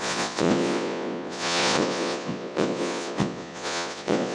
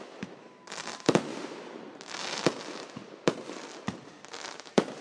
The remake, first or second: first